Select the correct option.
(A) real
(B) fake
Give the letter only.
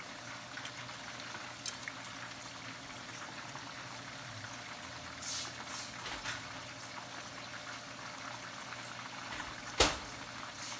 A